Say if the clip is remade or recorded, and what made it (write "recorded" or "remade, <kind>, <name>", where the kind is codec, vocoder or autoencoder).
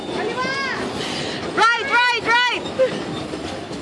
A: recorded